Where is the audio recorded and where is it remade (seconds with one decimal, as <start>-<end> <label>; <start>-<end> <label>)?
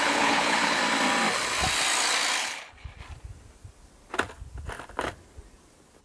0.0-0.8 remade; 0.8-2.4 recorded; 2.4-3.0 remade; 3.0-6.0 recorded